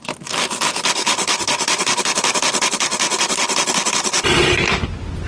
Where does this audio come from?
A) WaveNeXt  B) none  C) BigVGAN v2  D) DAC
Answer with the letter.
B